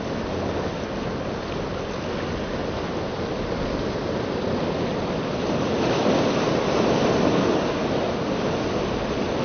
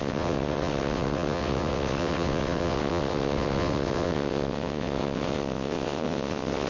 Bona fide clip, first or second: first